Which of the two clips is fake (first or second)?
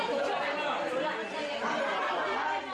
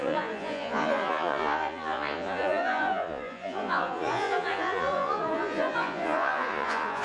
second